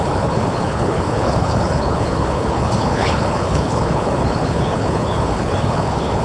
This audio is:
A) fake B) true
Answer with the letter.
A